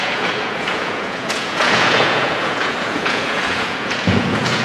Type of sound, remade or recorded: remade